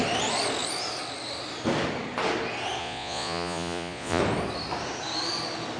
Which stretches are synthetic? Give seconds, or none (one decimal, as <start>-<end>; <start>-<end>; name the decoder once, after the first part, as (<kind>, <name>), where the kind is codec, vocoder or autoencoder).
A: 2.8-4.2 (vocoder, Vocos)